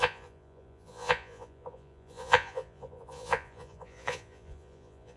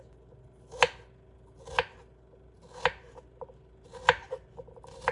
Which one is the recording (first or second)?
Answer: second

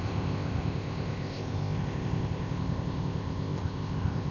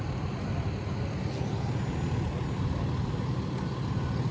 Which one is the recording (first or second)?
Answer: second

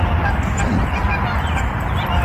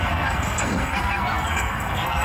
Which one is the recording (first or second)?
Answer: first